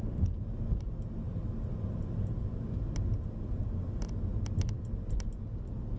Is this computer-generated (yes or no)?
no